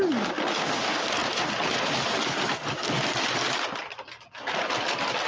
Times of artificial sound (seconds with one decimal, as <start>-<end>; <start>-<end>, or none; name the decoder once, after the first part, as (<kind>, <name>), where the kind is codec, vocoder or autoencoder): none